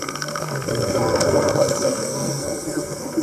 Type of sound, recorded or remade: remade